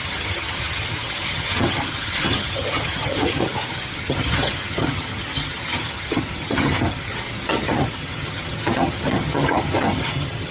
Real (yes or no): no